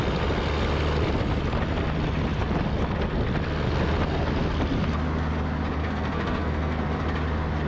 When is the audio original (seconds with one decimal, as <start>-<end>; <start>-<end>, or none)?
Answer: 0.0-5.8; 6.8-7.7